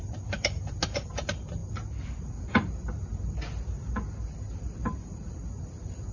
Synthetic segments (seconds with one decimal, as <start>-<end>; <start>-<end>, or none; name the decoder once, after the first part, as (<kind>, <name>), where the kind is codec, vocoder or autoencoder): none